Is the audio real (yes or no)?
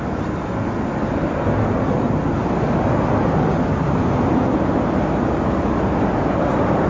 yes